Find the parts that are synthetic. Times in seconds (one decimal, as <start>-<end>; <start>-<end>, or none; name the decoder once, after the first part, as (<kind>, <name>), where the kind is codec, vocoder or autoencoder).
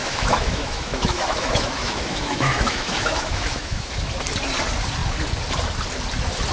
0.0-3.9 (autoencoder, DAC-VAE)